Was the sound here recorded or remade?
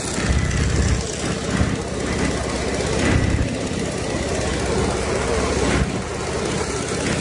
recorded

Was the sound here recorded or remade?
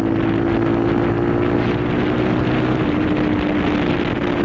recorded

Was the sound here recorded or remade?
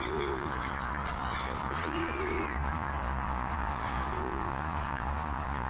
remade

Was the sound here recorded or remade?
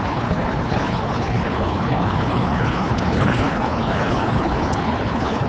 remade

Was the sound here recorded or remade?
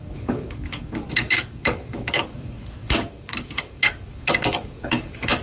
remade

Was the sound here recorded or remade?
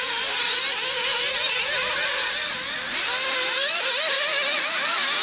recorded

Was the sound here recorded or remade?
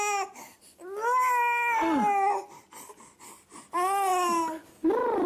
recorded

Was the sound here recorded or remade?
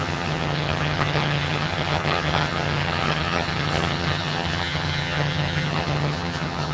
remade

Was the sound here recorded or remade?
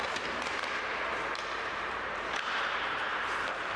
remade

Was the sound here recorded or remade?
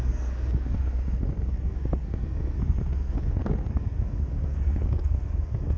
remade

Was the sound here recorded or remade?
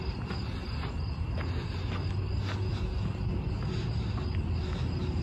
recorded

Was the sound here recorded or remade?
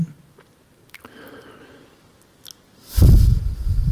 recorded